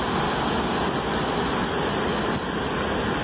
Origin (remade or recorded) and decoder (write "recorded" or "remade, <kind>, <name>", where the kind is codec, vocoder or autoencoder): recorded